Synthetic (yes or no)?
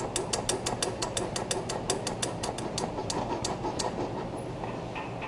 no